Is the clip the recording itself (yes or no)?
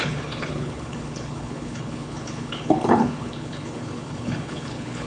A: no